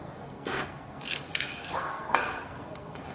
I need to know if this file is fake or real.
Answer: fake